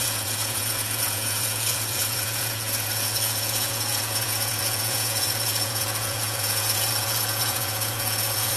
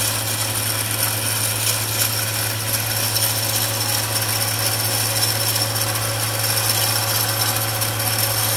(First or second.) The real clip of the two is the second